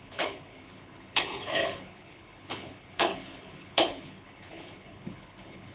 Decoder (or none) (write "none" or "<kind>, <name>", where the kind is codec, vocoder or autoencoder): codec, HILCodec